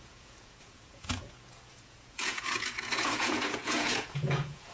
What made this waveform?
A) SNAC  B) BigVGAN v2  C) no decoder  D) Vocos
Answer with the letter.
D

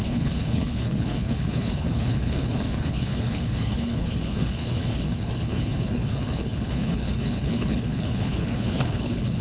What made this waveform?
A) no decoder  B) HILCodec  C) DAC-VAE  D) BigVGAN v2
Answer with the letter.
B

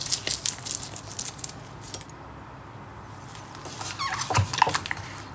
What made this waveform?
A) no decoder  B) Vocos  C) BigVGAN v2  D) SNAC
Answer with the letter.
A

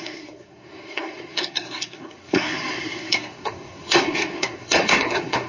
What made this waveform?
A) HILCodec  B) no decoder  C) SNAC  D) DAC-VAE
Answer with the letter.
C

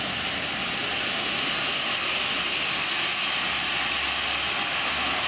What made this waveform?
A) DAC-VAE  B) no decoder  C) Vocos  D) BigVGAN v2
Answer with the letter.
B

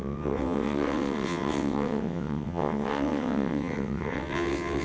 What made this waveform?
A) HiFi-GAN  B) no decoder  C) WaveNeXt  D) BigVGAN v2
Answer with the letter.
C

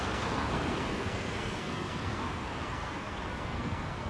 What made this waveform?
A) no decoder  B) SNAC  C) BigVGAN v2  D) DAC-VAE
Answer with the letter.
B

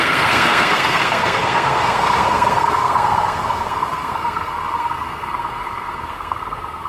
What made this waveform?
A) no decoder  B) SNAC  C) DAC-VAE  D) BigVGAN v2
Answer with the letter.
B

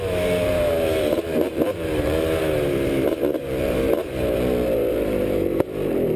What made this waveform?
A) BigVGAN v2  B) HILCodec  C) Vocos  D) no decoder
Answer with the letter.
A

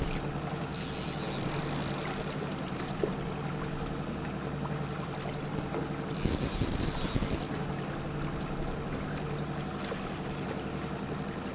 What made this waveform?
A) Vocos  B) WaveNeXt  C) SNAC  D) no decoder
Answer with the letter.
D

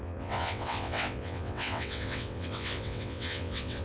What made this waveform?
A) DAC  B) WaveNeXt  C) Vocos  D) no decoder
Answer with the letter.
B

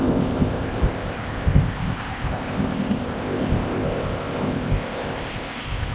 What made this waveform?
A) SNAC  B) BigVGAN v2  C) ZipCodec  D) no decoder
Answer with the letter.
C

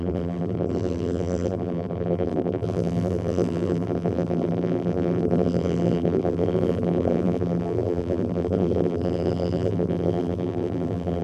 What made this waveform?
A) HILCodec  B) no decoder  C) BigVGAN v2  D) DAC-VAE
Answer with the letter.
C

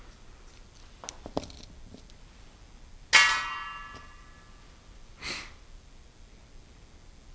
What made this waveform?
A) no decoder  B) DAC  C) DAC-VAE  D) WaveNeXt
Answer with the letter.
A